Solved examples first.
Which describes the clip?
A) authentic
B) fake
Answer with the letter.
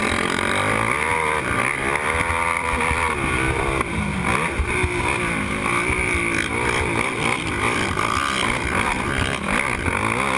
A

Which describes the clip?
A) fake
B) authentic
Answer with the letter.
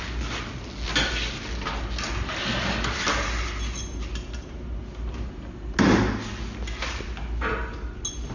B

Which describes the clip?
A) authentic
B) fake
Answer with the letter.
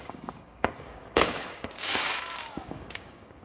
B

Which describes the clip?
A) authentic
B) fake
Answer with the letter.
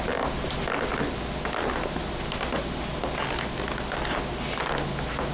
A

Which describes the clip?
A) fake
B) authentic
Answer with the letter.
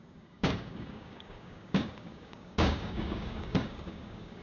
A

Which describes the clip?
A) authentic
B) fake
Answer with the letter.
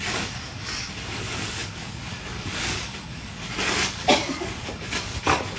B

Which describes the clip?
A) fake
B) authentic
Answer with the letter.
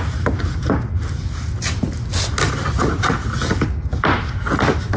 B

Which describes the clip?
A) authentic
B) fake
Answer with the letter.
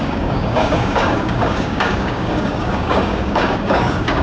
B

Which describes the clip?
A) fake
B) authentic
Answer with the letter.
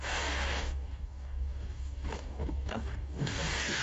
A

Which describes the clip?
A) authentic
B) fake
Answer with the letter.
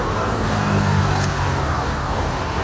B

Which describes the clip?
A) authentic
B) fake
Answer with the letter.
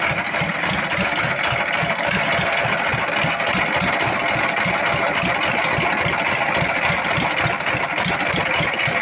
A